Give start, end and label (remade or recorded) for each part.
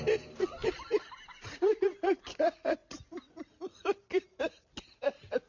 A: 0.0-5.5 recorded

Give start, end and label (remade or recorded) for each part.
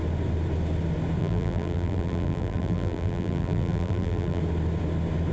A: 0.0-1.2 recorded; 1.2-4.4 remade; 4.4-5.3 recorded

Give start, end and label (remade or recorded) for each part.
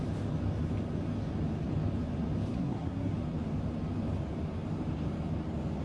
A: 0.0-2.5 recorded; 2.5-3.1 remade; 3.1-5.8 recorded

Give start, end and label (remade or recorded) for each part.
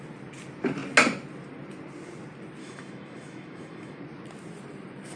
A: 0.0-2.6 recorded; 2.6-4.0 remade; 4.0-5.2 recorded